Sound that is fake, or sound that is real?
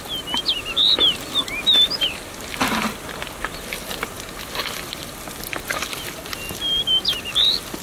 real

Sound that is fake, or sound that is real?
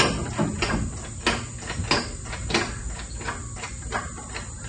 real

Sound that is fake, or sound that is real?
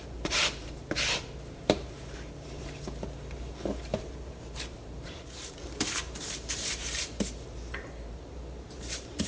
fake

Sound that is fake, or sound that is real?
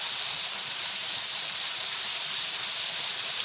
fake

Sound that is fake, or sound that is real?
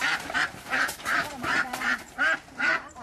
fake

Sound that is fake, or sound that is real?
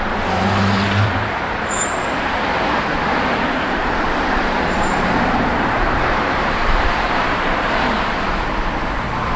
fake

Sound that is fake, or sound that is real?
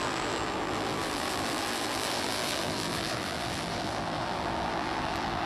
fake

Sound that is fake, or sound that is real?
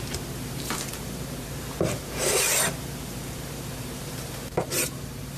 fake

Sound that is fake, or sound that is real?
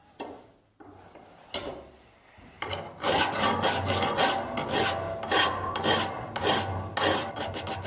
real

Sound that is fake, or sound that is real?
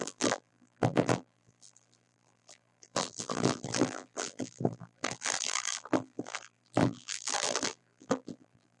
fake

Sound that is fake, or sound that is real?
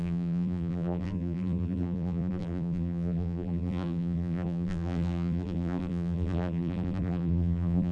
fake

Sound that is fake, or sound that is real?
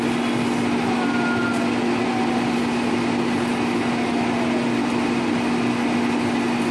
real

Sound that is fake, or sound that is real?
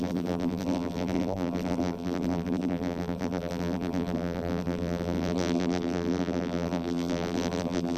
fake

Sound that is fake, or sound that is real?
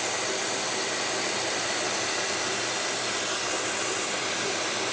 real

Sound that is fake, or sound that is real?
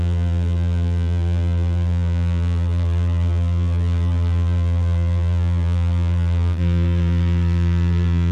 fake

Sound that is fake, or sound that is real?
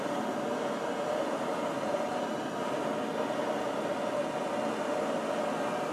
real